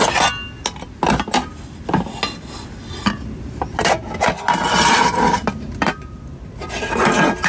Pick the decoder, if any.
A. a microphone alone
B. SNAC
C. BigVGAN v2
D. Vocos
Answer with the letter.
A